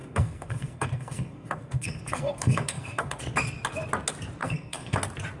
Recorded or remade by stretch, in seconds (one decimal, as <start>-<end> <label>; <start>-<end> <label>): 0.0-3.2 remade; 3.2-4.4 recorded; 4.4-5.0 remade; 5.0-5.4 recorded